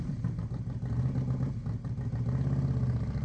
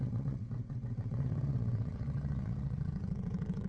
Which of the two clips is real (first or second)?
first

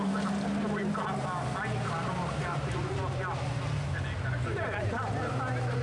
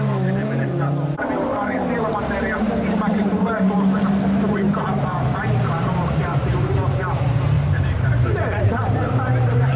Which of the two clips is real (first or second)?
first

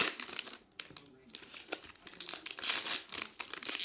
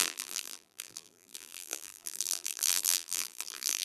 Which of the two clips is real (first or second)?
first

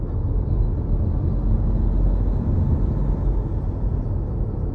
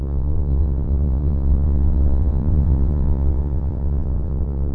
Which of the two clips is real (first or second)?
first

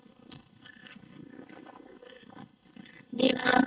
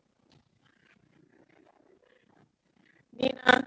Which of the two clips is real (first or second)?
second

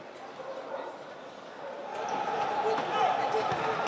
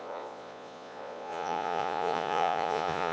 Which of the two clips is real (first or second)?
first